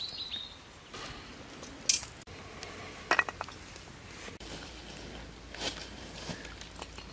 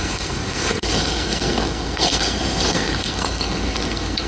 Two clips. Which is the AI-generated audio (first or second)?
second